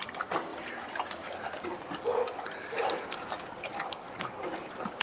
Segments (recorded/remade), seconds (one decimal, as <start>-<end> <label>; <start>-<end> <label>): 0.0-2.8 recorded; 2.8-5.0 remade